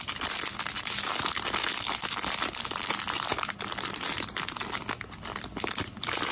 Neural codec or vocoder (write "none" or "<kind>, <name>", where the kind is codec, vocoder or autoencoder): none